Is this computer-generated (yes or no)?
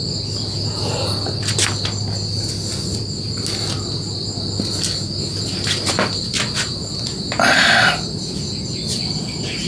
no